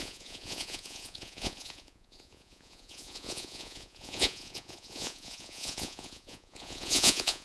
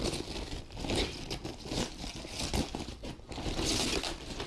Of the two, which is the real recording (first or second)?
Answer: second